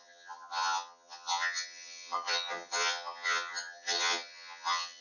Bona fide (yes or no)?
no